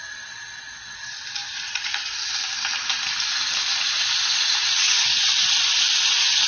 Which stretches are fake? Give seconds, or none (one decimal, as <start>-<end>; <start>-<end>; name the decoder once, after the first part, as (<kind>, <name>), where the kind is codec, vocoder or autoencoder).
1.4-2.3 (vocoder, Vocos); 4.6-5.3